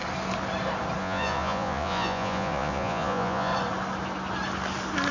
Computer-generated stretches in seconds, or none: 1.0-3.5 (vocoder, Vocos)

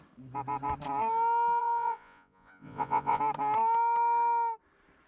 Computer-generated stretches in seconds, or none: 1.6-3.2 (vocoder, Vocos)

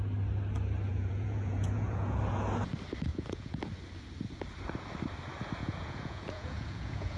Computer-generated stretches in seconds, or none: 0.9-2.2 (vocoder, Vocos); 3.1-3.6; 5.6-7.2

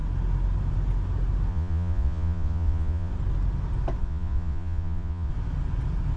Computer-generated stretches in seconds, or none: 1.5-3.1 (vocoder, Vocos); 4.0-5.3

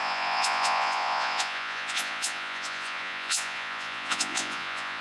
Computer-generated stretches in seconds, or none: 0.0-5.0 (vocoder, Vocos)